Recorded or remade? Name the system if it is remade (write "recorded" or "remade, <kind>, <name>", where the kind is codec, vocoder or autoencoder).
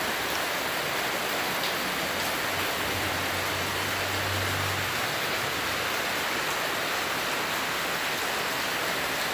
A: recorded